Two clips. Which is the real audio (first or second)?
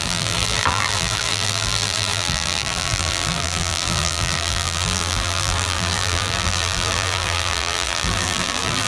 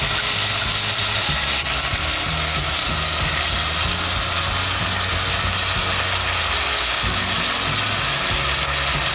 second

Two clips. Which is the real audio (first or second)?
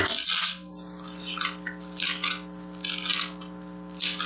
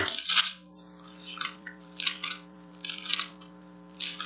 first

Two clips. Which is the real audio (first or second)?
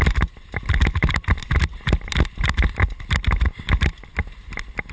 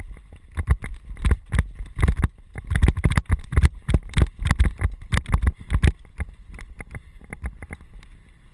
first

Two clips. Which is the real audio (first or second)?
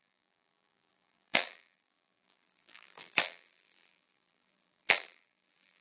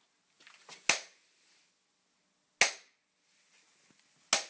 second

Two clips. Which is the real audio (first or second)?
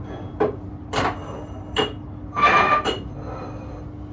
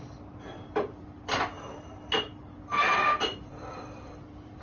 first